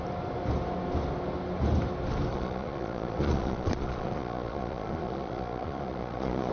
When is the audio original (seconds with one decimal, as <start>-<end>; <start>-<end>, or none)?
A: 0.0-2.3